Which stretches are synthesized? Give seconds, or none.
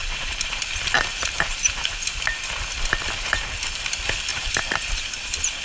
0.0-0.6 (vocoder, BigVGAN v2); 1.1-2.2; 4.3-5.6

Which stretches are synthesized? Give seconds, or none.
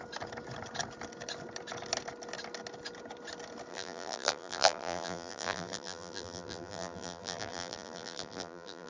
3.7-8.9 (vocoder, BigVGAN v2)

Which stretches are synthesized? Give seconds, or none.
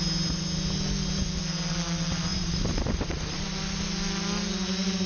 2.3-3.6 (vocoder, BigVGAN v2)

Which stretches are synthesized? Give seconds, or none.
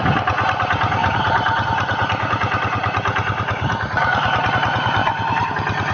1.0-4.5 (vocoder, BigVGAN v2); 5.0-5.5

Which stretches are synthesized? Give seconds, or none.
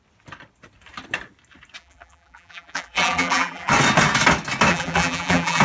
1.8-3.7 (vocoder, BigVGAN v2); 4.7-5.6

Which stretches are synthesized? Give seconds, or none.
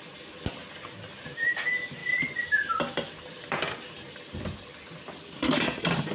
1.1-1.6 (vocoder, BigVGAN v2); 2.0-6.1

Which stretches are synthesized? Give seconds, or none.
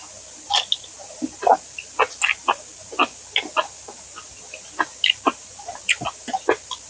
none